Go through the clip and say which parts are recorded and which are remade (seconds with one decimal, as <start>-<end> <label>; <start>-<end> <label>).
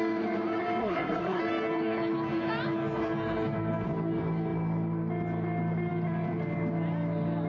0.0-0.8 recorded; 0.8-1.4 remade; 1.4-7.5 recorded